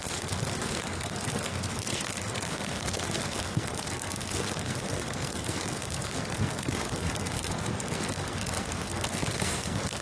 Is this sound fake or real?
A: fake